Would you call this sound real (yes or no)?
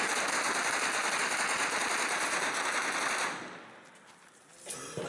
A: yes